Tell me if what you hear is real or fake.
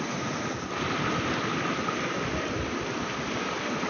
real